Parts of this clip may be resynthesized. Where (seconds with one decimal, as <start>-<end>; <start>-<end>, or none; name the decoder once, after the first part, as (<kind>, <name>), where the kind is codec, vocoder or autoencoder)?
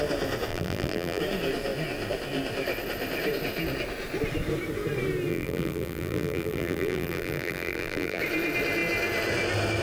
0.5-1.2 (vocoder, BigVGAN v2); 5.3-8.2